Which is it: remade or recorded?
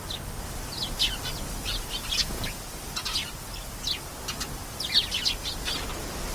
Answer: recorded